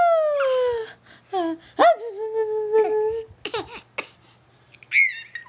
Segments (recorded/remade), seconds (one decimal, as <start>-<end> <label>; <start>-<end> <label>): 0.0-5.5 recorded